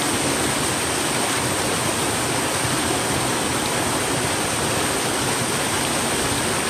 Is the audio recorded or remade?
recorded